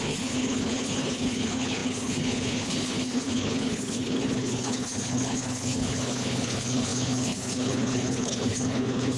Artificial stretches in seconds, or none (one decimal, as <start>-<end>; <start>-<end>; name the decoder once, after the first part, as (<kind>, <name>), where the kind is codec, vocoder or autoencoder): 0.0-9.2 (codec, HILCodec)